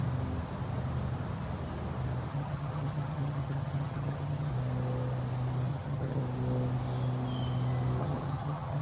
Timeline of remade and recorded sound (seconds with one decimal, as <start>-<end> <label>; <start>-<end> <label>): 0.0-2.3 recorded; 2.3-4.5 remade; 4.5-5.7 recorded; 5.7-6.2 remade; 6.2-8.0 recorded; 8.0-8.8 remade